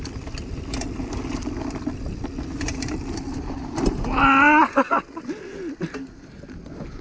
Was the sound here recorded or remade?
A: recorded